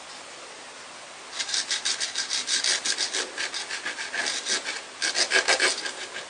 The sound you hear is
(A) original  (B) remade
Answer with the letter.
A